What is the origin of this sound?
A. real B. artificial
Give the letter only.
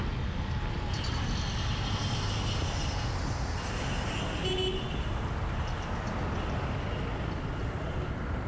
A